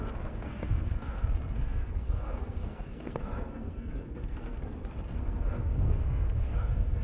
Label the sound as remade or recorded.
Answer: remade